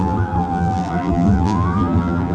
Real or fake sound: fake